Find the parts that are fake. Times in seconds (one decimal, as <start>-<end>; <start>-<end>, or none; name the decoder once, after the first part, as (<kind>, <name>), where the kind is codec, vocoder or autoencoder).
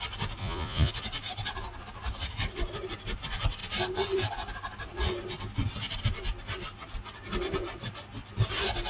0.4-0.9 (vocoder, Vocos)